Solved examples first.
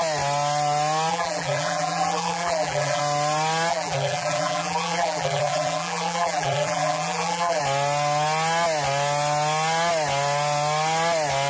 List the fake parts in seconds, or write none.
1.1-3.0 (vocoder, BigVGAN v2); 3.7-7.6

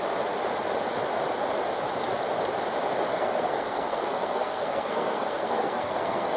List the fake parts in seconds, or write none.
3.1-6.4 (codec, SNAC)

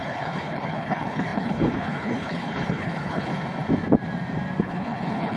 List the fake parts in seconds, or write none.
0.0-3.3 (codec, HILCodec); 4.6-5.4